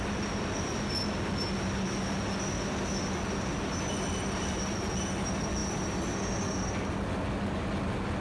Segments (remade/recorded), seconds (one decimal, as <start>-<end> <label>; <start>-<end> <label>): 0.0-8.2 recorded